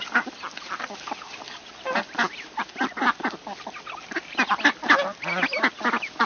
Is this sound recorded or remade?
recorded